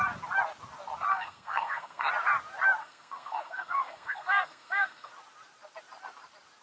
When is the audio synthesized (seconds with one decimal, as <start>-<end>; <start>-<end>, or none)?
1.1-2.1; 2.8-5.1